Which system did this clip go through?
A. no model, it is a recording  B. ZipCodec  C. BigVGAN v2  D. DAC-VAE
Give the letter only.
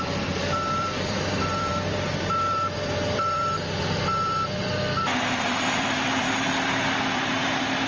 C